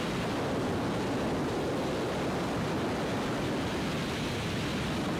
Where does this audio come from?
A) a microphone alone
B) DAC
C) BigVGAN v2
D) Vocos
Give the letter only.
A